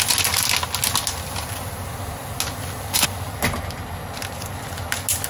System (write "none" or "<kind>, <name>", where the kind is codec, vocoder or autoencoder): none